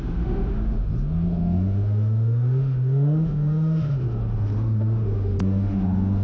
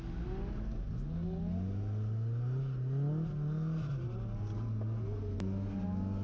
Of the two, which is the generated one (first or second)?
first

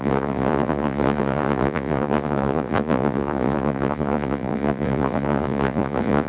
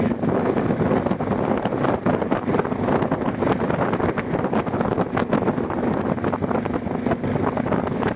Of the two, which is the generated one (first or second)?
first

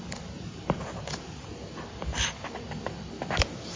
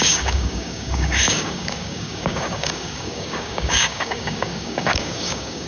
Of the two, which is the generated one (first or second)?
second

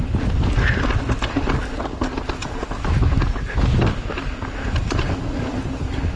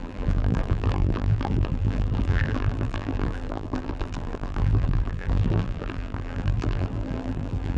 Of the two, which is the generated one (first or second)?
second